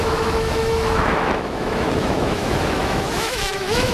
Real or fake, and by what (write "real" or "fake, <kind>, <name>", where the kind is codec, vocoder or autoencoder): fake, autoencoder, DAC-VAE